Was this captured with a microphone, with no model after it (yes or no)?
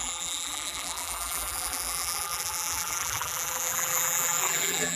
no